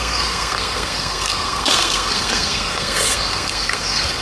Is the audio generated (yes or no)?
yes